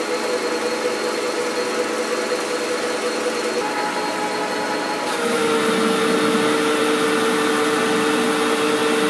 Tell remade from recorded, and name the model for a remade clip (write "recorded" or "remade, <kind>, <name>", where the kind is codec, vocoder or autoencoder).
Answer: recorded